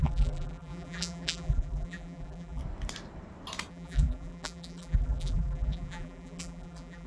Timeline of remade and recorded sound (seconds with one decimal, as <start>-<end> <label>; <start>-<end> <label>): 0.0-2.6 remade; 2.6-3.7 recorded; 3.7-7.1 remade

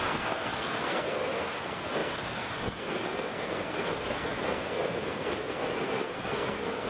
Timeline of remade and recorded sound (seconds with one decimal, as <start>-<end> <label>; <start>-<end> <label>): 0.0-6.9 remade

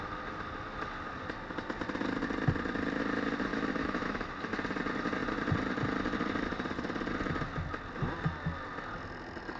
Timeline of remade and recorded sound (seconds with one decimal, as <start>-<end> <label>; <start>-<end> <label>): 0.0-3.5 recorded; 3.5-4.3 remade; 4.3-9.6 recorded

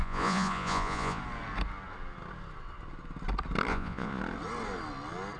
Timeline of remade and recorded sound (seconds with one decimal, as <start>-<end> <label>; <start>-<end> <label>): 0.0-1.2 remade; 1.2-3.7 recorded; 3.7-4.2 remade; 4.2-5.4 recorded

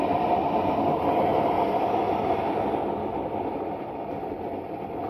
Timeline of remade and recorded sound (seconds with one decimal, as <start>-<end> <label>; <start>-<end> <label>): 0.0-5.1 recorded

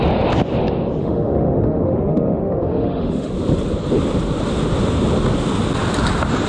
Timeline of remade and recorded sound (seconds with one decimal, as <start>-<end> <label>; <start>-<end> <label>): 0.0-1.0 recorded; 1.0-3.3 remade; 3.3-6.5 recorded